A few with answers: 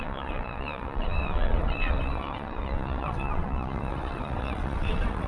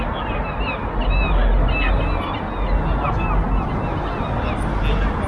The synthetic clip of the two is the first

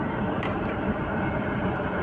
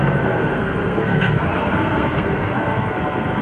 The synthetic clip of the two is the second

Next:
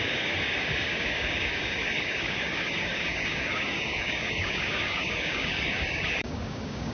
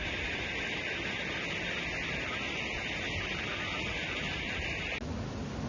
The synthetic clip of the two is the first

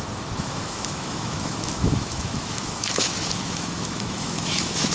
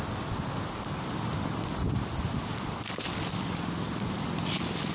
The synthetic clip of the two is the first